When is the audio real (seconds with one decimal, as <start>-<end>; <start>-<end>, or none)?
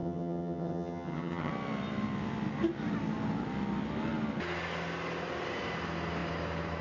1.5-6.8